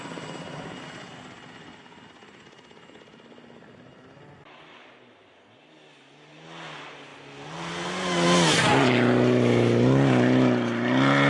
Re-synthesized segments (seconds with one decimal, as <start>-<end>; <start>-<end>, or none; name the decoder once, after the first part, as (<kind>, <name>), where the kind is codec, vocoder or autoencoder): none